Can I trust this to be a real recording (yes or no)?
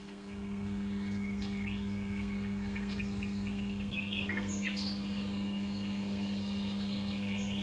no